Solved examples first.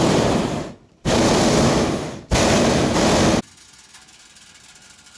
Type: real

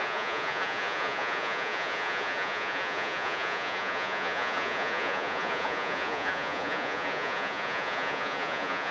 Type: fake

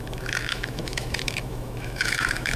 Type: fake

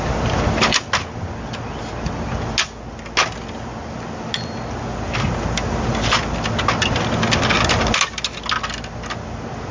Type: real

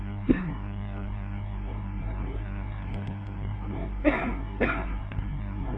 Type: fake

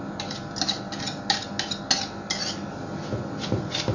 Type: real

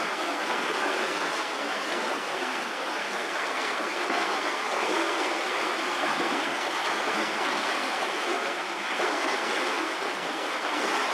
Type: fake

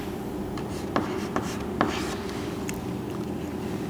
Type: fake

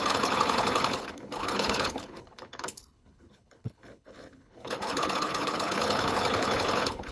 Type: fake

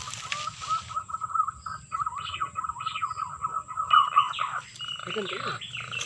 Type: real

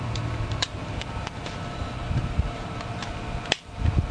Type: fake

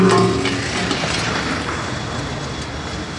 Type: real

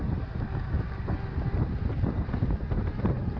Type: real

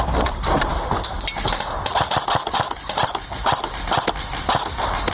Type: real